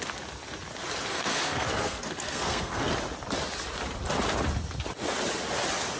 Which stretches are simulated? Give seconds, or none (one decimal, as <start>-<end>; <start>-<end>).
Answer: 1.1-2.9